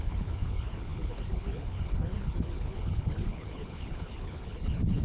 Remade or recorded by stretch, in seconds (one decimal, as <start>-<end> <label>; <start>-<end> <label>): 0.0-5.0 remade